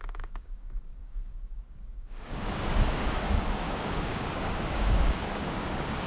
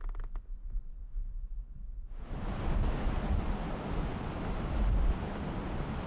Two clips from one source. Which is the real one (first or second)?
second